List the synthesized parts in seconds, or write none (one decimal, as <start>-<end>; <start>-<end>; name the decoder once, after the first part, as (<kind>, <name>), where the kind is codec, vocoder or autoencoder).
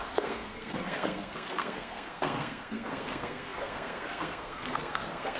0.0-5.4 (codec, SNAC)